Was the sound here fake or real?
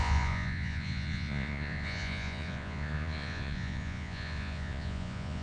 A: fake